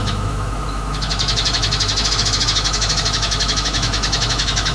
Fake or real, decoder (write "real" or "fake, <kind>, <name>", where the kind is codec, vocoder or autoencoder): fake, autoencoder, DAC-VAE